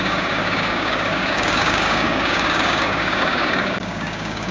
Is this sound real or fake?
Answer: fake